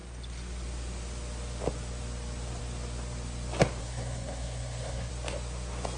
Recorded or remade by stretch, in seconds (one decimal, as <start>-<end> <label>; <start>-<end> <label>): 0.0-3.8 recorded; 3.8-5.1 remade; 5.1-6.0 recorded